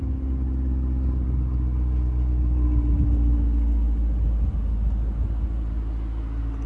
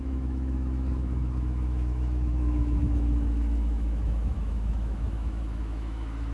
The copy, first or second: second